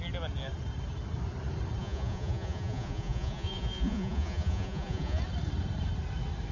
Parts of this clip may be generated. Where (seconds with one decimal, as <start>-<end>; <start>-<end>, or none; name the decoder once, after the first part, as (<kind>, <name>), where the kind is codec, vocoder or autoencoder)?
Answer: 1.8-5.2 (vocoder, Vocos)